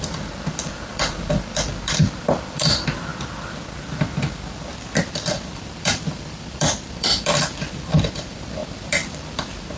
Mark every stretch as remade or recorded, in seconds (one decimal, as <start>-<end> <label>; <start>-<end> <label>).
0.0-3.1 remade; 3.1-5.1 recorded; 5.1-9.8 remade